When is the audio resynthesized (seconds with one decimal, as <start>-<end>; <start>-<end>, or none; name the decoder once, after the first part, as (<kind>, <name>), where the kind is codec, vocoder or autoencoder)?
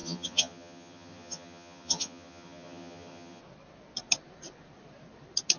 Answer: 0.0-3.4 (vocoder, HiFi-GAN)